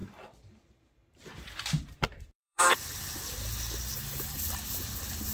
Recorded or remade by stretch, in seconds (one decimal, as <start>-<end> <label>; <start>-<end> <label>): 0.0-3.2 remade; 3.2-5.3 recorded